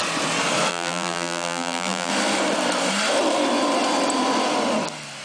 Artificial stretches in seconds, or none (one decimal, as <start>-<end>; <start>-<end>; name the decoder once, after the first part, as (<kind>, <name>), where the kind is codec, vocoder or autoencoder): 0.7-2.1 (vocoder, BigVGAN v2)